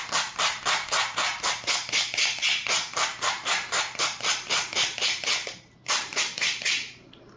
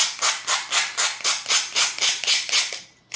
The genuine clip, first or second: second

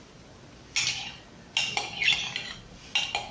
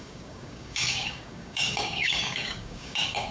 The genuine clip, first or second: first